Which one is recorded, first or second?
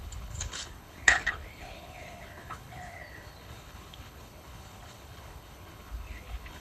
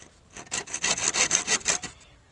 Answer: second